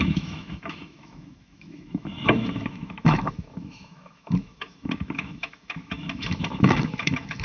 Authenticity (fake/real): fake